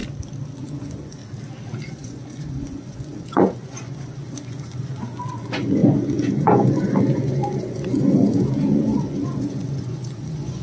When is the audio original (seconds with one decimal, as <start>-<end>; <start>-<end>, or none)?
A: 0.0-0.6; 1.2-1.9